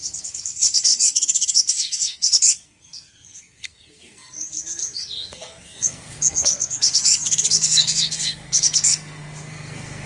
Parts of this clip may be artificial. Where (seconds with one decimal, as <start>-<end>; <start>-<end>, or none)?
0.0-10.1